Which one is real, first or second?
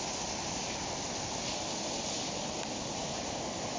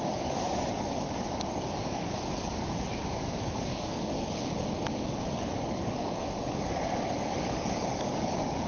first